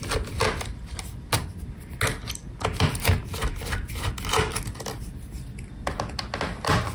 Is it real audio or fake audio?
real